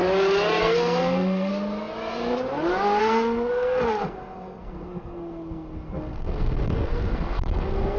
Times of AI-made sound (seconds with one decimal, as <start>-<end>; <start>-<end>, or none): 0.6-1.5; 3.0-8.0